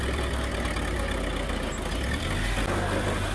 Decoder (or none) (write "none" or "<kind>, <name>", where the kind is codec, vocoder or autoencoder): none